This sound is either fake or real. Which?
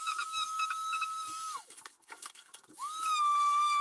fake